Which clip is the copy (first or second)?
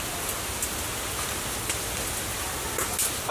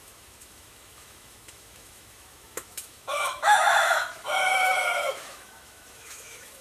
second